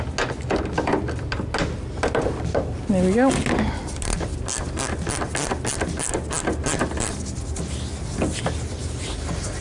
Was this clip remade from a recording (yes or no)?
no